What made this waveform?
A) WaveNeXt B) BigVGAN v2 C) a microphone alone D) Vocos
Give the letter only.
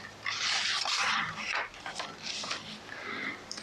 B